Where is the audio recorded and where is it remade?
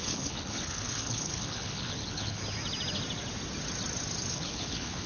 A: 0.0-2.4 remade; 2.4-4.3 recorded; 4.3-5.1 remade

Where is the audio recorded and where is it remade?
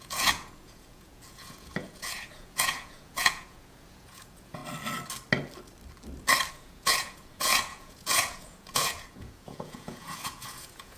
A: 0.0-4.6 remade; 4.6-6.5 recorded; 6.5-11.0 remade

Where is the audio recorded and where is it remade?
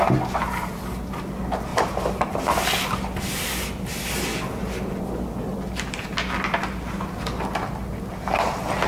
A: 0.0-1.7 recorded; 1.7-2.3 remade; 2.3-8.9 recorded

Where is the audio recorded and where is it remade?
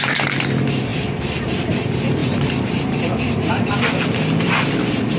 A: 0.0-5.2 remade